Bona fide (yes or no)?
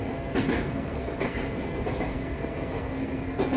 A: no